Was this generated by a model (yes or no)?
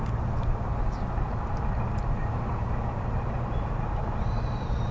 yes